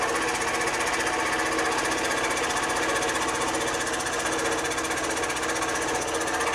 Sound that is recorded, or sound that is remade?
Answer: recorded